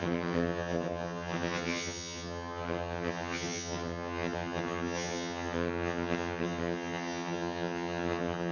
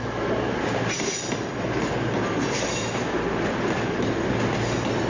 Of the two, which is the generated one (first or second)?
first